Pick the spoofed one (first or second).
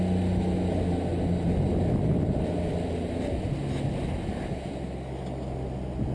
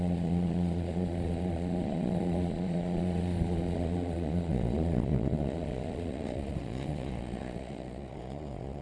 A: second